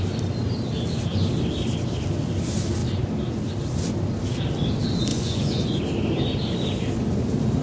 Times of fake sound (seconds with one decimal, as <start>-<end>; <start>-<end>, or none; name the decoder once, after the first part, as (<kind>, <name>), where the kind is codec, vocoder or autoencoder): 5.1-5.8 (vocoder, Vocos)